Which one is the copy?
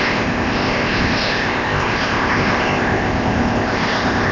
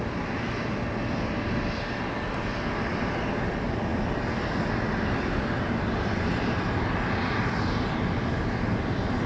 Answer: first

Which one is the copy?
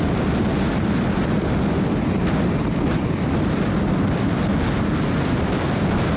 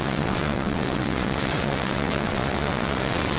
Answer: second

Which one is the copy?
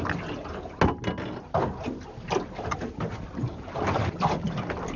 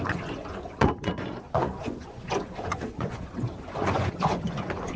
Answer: second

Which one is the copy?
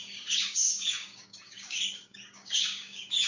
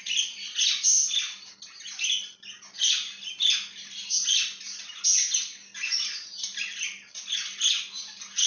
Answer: first